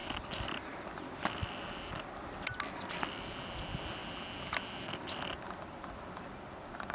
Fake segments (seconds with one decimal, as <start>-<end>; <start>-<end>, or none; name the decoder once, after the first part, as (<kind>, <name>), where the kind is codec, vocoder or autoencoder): none